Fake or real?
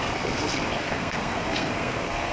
fake